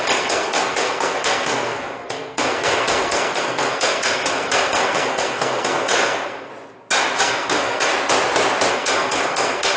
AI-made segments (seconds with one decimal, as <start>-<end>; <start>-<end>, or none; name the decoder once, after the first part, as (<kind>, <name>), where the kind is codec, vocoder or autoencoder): 0.0-6.5 (codec, SNAC); 7.2-7.9; 8.7-9.8